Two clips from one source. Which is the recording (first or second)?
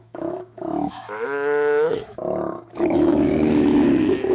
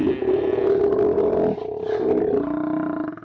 second